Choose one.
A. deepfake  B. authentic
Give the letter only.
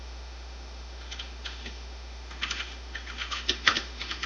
A